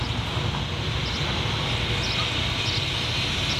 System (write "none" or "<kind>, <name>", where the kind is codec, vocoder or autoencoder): none